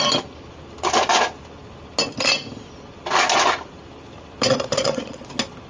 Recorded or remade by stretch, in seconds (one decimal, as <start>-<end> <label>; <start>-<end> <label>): 0.0-4.5 recorded; 4.5-5.3 remade; 5.3-5.7 recorded